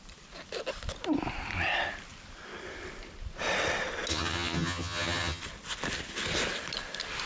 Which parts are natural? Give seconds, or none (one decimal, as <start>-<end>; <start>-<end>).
0.0-4.1; 5.4-7.3